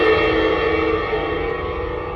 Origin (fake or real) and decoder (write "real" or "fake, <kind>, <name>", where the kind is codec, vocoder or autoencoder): real